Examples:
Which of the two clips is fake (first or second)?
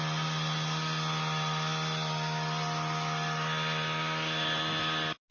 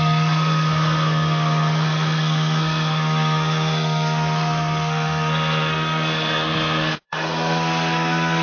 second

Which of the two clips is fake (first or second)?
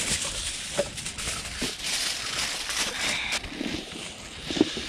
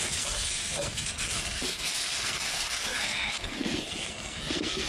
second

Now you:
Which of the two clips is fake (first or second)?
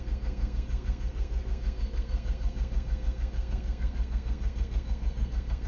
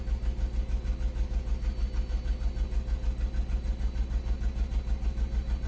first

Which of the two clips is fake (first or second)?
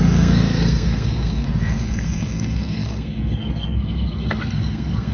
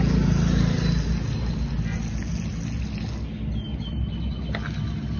first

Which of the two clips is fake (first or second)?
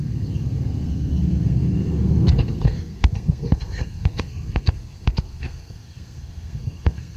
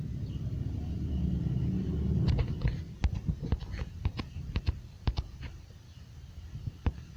first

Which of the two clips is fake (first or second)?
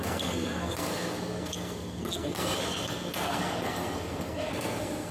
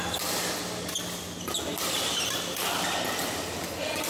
first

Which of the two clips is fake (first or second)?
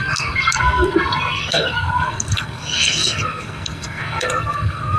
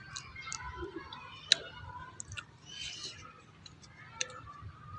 first